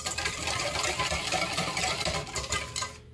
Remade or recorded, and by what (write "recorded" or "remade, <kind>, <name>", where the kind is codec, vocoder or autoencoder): recorded